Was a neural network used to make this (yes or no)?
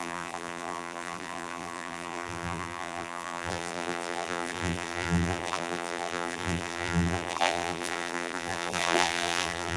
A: yes